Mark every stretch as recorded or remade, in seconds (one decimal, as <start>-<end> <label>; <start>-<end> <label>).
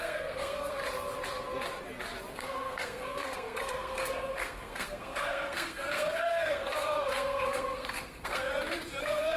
0.0-0.8 remade; 0.8-2.3 recorded; 2.3-8.5 remade; 8.5-9.0 recorded; 9.0-9.4 remade